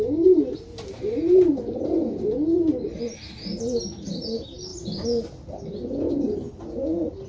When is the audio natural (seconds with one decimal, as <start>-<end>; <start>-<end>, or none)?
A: 0.0-7.3